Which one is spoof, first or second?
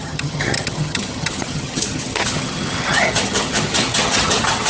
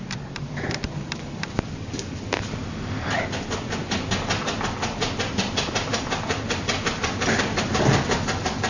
first